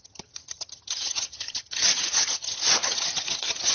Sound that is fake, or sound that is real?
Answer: fake